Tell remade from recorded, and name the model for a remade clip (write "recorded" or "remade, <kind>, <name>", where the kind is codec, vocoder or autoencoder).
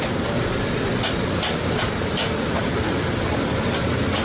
remade, vocoder, BigVGAN v2